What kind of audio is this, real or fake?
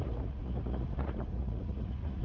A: fake